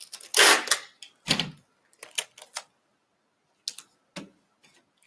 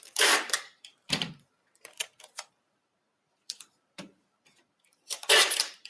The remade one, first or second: second